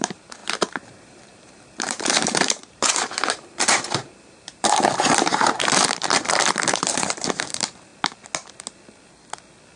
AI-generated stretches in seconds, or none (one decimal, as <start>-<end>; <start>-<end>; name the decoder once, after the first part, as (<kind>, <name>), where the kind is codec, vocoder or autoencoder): 0.0-7.9 (vocoder, BigVGAN v2)